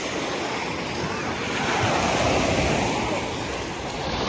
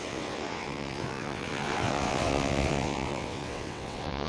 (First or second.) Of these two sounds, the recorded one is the first